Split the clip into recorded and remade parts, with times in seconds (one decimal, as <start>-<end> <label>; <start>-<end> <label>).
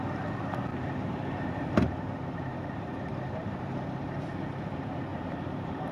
0.0-0.7 recorded; 0.7-4.2 remade; 4.2-5.1 recorded; 5.1-5.9 remade